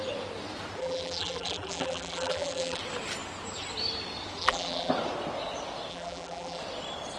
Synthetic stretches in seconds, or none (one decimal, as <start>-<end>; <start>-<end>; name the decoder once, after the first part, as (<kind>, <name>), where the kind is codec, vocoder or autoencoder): 0.8-2.8 (vocoder, BigVGAN v2); 4.4-4.9; 5.9-6.6

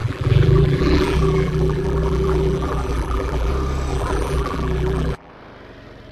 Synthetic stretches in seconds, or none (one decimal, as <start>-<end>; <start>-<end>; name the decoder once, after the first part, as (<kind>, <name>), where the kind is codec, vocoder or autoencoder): 0.0-3.5 (vocoder, BigVGAN v2); 3.9-5.3

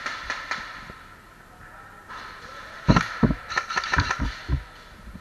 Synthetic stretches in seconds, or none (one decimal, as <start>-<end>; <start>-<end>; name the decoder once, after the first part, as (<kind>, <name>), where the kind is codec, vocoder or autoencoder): none

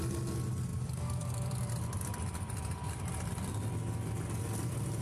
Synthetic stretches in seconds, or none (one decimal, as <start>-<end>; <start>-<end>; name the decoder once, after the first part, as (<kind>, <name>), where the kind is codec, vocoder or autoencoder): 0.7-3.7 (vocoder, BigVGAN v2)

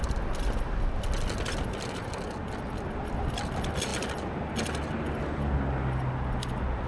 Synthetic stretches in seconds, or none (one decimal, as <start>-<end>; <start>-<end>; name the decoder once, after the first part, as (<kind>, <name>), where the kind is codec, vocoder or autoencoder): none

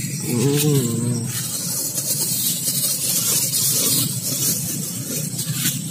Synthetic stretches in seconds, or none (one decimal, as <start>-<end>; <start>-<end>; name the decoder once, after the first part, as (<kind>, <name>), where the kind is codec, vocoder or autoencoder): 2.2-5.9 (vocoder, BigVGAN v2)

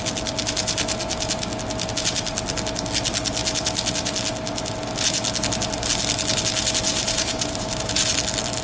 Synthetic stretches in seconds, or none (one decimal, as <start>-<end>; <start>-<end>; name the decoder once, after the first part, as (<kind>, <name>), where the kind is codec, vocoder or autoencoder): 6.9-7.9 (vocoder, BigVGAN v2)